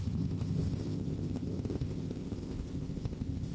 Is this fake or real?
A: fake